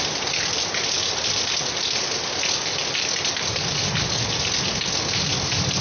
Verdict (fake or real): real